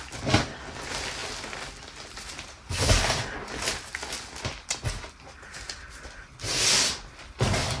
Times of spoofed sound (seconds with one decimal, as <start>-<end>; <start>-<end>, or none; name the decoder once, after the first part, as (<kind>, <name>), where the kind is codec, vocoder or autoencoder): none